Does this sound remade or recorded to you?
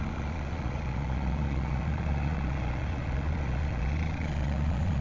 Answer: remade